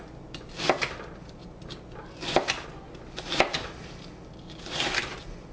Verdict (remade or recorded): recorded